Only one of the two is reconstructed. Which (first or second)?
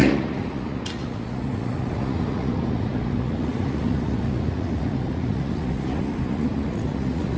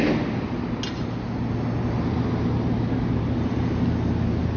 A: first